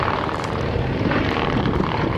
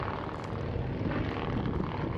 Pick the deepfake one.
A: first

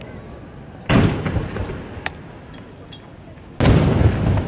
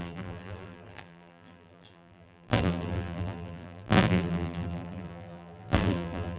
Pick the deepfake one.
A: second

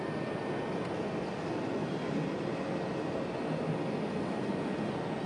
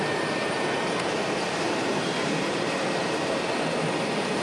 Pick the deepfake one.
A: second